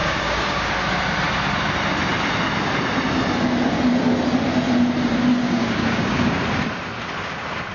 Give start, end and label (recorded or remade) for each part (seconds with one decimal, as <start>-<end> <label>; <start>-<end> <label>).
0.0-0.7 remade; 0.7-5.3 recorded; 5.3-6.4 remade; 6.4-7.7 recorded